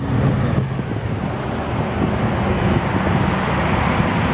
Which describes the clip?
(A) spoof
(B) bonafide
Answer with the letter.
B